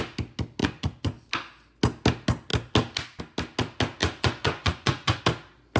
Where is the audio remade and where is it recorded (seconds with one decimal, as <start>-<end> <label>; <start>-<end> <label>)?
0.0-0.6 recorded; 0.6-1.3 remade; 1.3-4.0 recorded; 4.0-5.2 remade; 5.2-5.8 recorded